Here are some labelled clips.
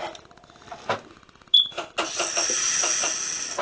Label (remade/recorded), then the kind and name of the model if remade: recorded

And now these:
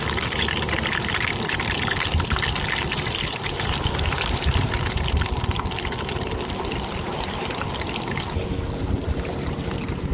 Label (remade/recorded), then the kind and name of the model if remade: recorded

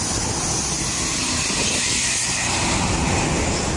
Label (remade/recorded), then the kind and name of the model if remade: recorded